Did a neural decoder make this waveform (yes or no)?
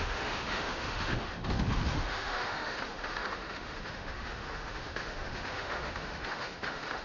yes